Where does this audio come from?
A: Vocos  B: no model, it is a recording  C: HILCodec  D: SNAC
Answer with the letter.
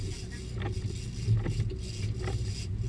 B